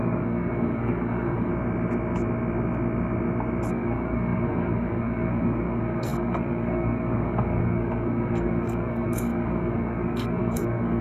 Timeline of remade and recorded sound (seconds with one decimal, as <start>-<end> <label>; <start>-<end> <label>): 0.0-1.5 remade; 1.5-3.7 recorded; 3.7-11.0 remade